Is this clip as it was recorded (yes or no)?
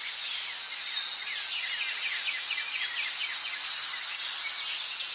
yes